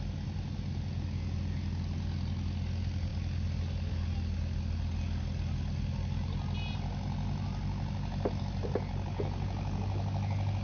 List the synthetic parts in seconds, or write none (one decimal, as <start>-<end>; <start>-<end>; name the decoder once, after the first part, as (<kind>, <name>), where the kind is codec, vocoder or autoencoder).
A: none

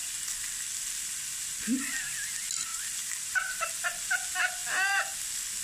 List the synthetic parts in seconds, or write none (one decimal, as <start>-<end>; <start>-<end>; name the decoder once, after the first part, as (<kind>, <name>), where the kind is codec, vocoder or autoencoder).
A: 2.7-3.7 (vocoder, BigVGAN v2)

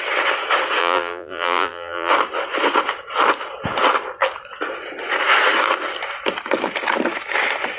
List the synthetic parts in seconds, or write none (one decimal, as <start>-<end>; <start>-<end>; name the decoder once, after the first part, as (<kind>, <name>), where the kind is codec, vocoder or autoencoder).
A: 0.8-2.1 (vocoder, BigVGAN v2)

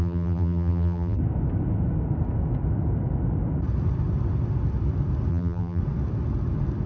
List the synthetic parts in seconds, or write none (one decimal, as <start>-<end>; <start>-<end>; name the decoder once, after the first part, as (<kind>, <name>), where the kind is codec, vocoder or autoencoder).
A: 0.0-1.2 (vocoder, BigVGAN v2); 5.3-5.8

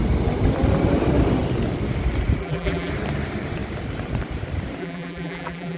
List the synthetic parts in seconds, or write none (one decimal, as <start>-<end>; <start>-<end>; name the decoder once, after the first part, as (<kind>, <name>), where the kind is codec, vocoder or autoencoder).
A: 2.4-2.9 (vocoder, BigVGAN v2); 4.8-5.8